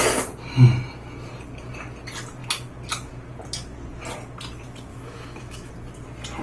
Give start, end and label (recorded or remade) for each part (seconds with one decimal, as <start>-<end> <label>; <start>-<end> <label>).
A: 0.0-4.9 recorded; 4.9-5.7 remade; 5.7-6.4 recorded